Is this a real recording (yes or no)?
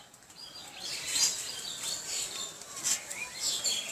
yes